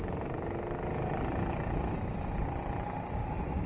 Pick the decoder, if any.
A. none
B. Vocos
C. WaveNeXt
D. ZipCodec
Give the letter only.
A